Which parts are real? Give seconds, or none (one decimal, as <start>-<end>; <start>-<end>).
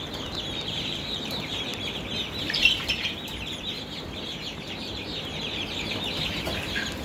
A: none